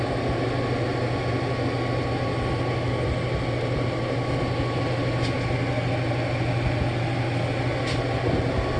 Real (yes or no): yes